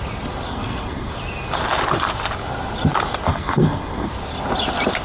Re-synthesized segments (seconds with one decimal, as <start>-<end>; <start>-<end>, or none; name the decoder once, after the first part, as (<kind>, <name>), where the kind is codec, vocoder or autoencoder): 0.5-1.1 (codec, SNAC); 3.3-4.1